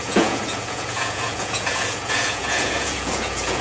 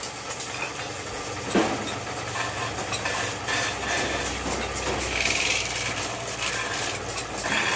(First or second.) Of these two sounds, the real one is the second